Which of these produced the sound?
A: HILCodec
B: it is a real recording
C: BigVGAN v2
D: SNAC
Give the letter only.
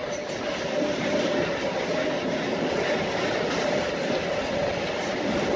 B